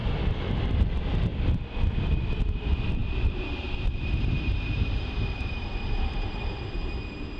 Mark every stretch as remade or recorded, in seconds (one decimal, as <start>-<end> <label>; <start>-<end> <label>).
0.0-0.5 recorded; 0.5-1.3 remade; 1.3-2.6 recorded; 2.6-7.4 remade